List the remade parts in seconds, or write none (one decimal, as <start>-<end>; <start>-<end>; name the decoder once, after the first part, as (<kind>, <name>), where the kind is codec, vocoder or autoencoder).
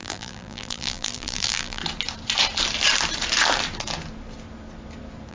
0.0-1.8 (vocoder, BigVGAN v2)